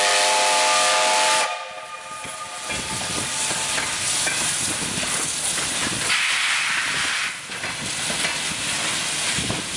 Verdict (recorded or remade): recorded